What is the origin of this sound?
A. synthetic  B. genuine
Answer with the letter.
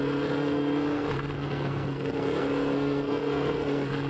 A